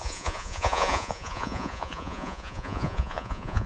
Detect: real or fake fake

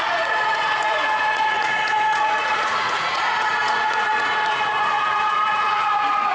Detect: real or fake fake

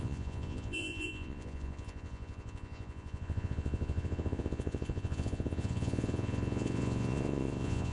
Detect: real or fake fake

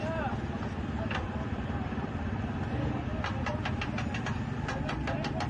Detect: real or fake real